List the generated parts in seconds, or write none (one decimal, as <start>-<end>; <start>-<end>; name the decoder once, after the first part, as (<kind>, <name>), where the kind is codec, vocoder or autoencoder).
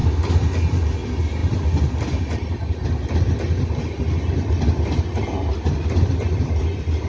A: none